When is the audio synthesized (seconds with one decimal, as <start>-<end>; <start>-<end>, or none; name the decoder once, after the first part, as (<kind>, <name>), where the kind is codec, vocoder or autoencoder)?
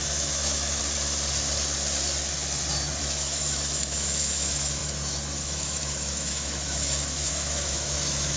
0.0-0.8 (autoencoder, DAC-VAE); 3.0-8.4